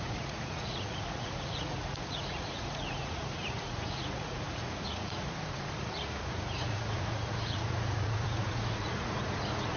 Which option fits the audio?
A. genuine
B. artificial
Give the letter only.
B